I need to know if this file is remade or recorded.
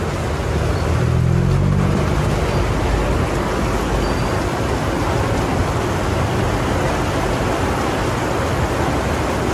recorded